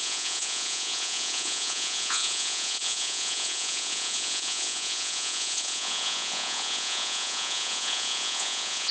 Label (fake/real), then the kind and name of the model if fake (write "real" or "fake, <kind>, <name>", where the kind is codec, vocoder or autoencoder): fake, vocoder, Vocos